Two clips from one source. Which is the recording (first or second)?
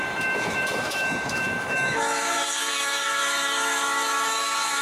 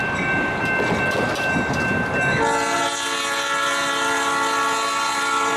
second